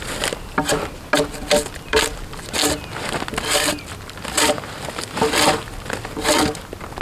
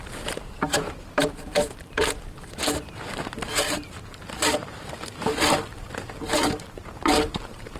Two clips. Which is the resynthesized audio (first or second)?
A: second